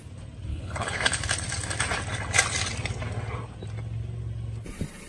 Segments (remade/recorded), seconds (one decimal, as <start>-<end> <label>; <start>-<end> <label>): 0.0-0.5 recorded; 0.5-1.1 remade; 1.1-5.1 recorded